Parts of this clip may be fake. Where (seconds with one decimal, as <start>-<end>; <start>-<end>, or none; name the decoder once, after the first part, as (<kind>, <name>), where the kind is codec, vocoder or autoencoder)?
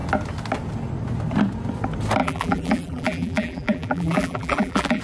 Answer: 2.2-5.0 (vocoder, BigVGAN v2)